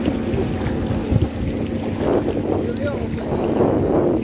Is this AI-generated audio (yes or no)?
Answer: no